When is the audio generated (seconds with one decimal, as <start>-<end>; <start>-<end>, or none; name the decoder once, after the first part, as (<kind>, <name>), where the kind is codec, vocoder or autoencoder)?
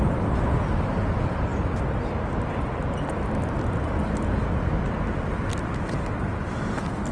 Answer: none